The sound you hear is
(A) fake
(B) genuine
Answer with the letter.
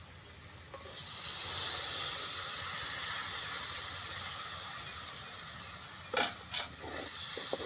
B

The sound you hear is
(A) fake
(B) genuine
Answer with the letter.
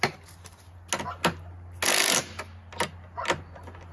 B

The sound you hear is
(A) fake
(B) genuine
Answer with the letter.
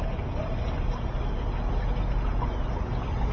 B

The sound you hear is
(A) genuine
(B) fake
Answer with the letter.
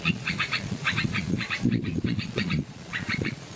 B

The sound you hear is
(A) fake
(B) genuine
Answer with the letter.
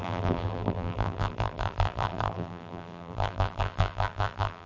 A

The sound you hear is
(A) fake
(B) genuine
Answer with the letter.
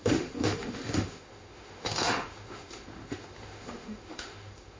A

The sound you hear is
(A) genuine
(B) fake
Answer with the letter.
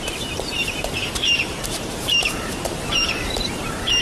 B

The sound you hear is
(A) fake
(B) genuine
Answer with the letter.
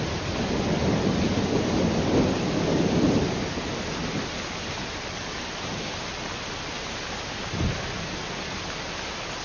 B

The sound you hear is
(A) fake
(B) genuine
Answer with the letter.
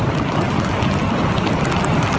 B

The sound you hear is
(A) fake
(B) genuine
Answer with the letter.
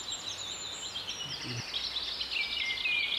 B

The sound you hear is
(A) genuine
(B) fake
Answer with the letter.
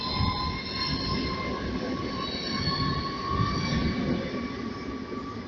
A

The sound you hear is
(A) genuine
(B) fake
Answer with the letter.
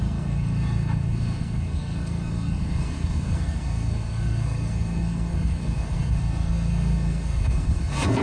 B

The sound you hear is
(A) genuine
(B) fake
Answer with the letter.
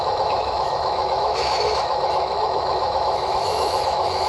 B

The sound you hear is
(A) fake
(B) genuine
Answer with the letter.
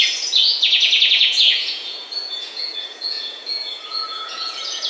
A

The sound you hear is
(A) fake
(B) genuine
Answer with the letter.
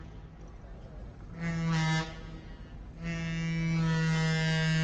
B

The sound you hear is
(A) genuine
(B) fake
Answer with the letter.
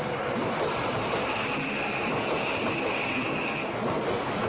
A